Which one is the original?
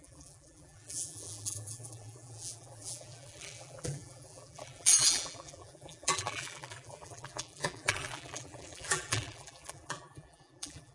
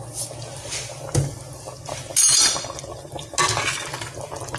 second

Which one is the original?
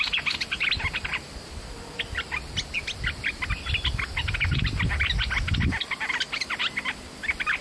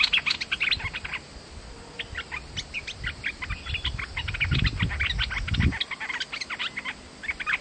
second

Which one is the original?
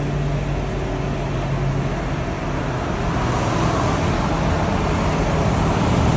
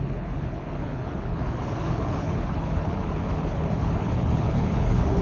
first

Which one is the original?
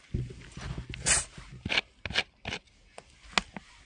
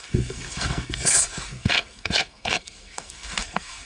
first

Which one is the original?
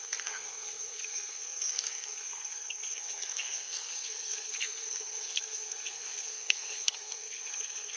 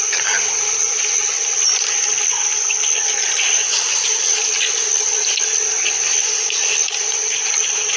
second